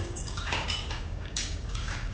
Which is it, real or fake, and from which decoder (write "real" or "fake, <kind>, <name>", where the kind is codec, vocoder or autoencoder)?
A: fake, codec, DAC